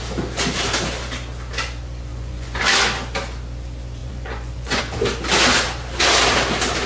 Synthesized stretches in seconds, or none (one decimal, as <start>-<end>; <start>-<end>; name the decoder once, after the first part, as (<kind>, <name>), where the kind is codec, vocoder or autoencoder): 2.1-2.6 (vocoder, Vocos); 4.0-4.8